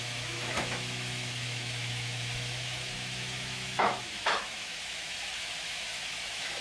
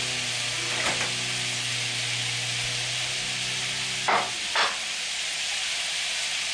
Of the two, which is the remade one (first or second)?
first